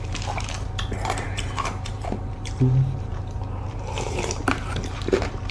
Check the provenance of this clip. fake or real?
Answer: fake